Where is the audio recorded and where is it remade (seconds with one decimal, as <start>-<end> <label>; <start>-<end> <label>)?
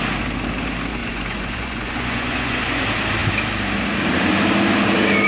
0.0-1.0 recorded; 1.0-2.8 remade; 2.8-5.3 recorded